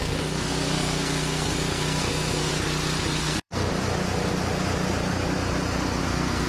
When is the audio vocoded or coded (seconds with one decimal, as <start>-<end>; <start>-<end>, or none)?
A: 0.0-2.5; 3.2-3.7; 6.0-6.5